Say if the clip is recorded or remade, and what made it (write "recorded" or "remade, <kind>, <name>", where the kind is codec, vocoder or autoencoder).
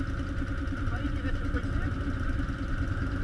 recorded